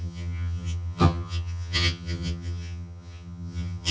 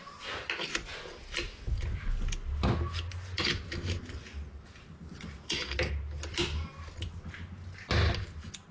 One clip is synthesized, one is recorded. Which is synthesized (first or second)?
first